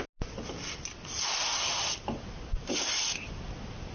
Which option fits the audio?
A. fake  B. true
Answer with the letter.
B